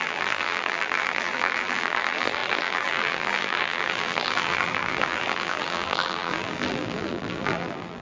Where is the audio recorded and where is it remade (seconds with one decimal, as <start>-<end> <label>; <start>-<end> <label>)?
0.0-8.0 remade